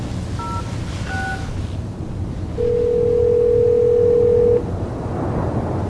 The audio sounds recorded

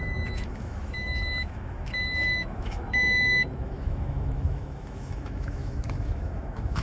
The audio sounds remade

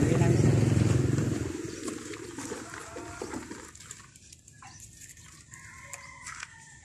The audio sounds recorded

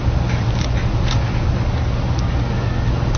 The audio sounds recorded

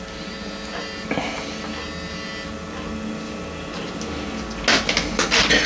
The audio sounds recorded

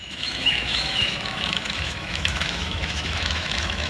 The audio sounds remade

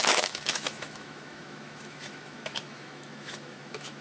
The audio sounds remade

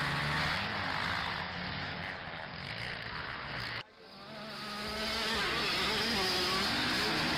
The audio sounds recorded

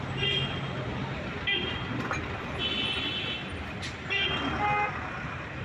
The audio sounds recorded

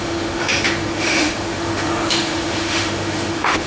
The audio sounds remade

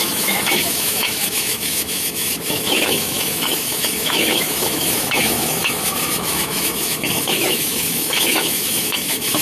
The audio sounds remade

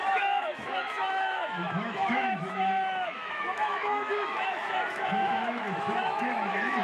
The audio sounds remade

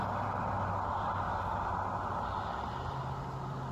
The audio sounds recorded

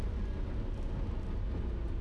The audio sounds recorded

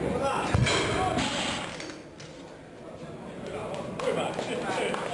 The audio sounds recorded